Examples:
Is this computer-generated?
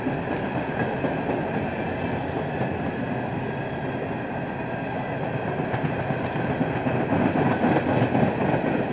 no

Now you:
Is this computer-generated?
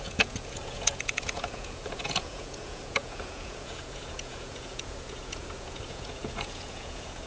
yes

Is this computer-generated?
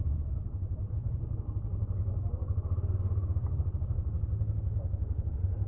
no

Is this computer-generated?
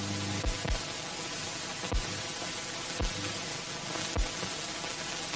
no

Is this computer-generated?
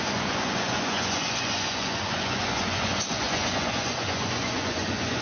yes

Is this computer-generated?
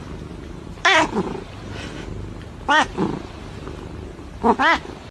no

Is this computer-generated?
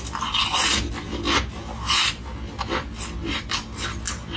no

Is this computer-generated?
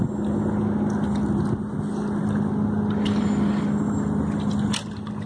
no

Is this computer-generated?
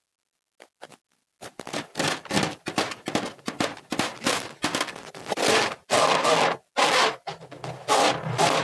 no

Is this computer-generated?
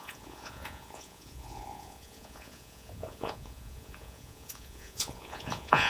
yes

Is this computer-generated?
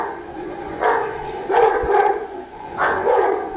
yes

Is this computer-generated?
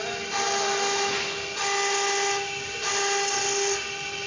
no